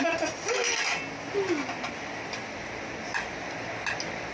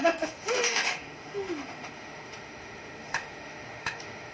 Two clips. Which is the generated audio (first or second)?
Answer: second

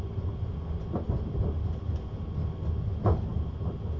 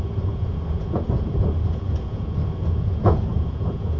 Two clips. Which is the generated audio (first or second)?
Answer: second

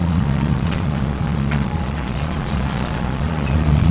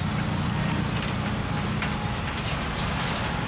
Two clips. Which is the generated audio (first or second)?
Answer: first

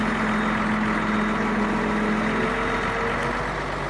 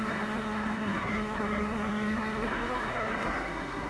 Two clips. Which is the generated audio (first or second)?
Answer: second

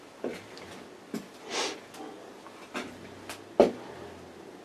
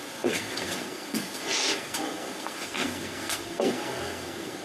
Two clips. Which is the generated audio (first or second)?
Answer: second